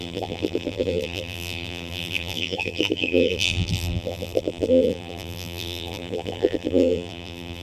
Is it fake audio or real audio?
fake